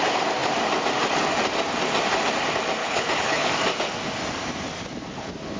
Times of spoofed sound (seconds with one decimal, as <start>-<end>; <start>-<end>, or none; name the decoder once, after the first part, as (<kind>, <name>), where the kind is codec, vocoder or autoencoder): 2.8-3.5 (codec, HILCodec)